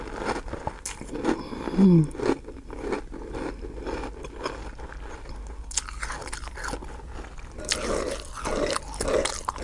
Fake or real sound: real